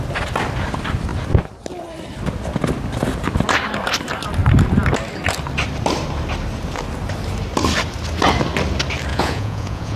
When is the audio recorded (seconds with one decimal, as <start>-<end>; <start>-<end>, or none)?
0.0-9.1